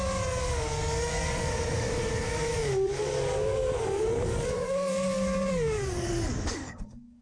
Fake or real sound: fake